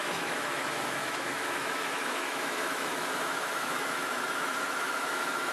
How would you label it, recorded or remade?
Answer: remade